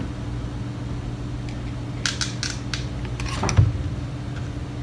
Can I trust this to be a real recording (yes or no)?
yes